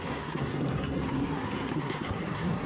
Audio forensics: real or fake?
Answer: fake